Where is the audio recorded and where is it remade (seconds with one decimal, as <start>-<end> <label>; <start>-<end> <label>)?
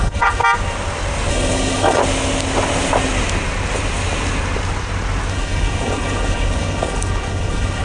0.0-0.4 remade; 0.4-1.3 recorded; 1.3-2.0 remade; 2.0-5.3 recorded; 5.3-7.8 remade